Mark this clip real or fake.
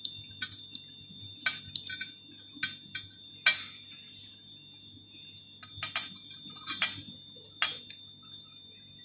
real